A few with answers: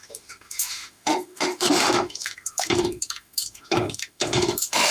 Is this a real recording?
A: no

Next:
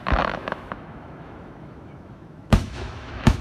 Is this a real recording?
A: no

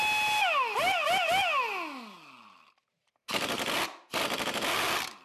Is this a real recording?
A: yes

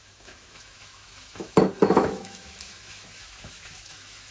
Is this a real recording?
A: no